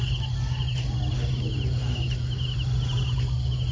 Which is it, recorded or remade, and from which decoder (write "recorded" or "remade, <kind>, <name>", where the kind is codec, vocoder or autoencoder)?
recorded